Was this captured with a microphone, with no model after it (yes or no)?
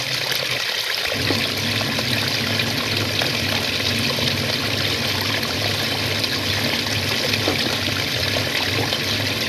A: yes